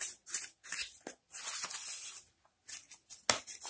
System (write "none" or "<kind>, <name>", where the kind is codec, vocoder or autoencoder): none